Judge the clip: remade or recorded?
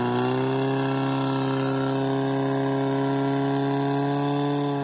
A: recorded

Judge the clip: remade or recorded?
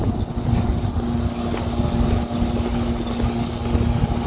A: recorded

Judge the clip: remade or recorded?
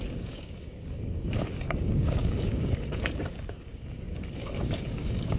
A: remade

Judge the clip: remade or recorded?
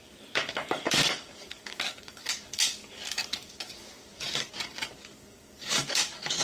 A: remade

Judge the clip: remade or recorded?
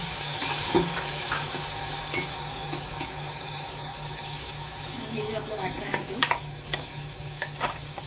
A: remade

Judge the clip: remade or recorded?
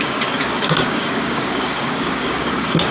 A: remade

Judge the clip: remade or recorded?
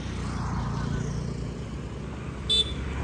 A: recorded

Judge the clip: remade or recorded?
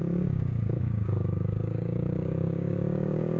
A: remade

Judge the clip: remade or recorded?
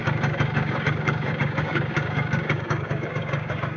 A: remade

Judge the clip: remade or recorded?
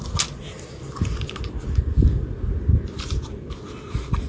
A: recorded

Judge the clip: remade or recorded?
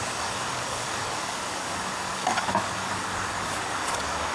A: remade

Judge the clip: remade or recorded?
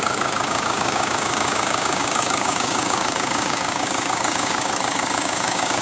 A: remade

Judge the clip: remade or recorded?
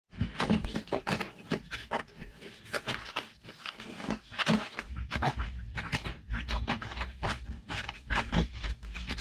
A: remade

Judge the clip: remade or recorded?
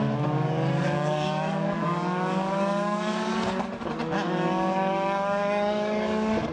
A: remade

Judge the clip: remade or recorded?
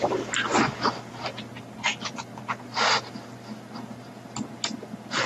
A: recorded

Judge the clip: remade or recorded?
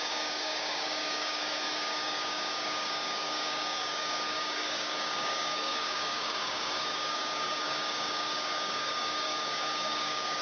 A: remade